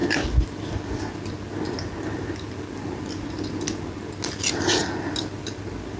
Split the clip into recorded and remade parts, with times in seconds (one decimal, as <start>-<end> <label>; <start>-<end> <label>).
0.0-6.0 recorded

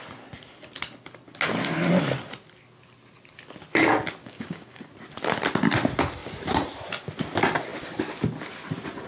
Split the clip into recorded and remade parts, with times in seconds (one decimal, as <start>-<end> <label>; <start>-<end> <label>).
0.0-4.2 recorded; 4.2-4.9 remade; 4.9-9.1 recorded

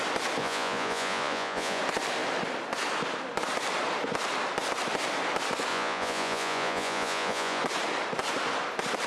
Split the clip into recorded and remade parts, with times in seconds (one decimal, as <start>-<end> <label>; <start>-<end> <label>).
0.0-0.4 recorded; 0.4-1.8 remade; 1.8-5.7 recorded; 5.7-7.6 remade; 7.6-9.1 recorded

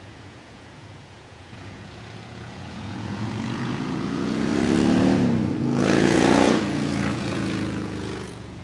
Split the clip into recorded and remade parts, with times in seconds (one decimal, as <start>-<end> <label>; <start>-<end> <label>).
0.0-4.5 remade; 4.5-5.6 recorded; 5.6-8.6 remade

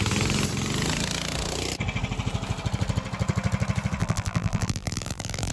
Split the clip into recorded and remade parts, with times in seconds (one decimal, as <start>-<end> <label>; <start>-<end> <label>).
0.0-4.0 recorded; 4.0-5.5 remade

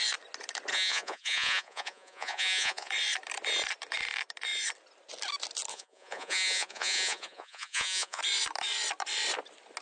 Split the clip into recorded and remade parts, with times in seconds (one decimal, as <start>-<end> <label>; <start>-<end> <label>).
0.0-0.7 recorded; 0.7-2.9 remade; 2.9-5.7 recorded; 5.7-8.2 remade; 8.2-9.8 recorded

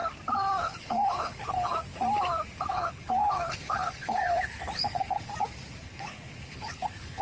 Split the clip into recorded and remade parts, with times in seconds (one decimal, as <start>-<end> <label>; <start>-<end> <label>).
0.0-0.6 recorded; 0.6-1.7 remade; 1.7-2.7 recorded; 2.7-5.3 remade; 5.3-5.8 recorded; 5.8-7.2 remade

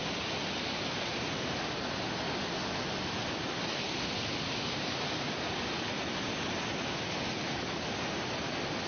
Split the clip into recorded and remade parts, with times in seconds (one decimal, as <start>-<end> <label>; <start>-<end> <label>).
0.0-8.9 recorded